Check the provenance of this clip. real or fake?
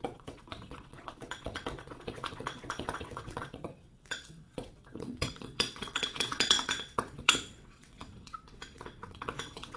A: fake